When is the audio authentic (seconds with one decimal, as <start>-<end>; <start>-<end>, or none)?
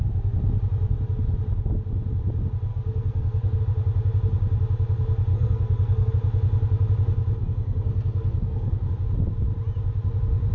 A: 0.0-2.7; 3.6-5.3; 6.1-7.4; 8.9-10.5